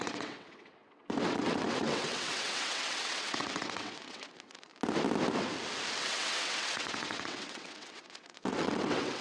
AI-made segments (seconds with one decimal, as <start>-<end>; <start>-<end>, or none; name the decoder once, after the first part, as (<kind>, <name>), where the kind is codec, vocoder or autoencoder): 0.0-4.7 (vocoder, WaveNeXt); 6.0-9.2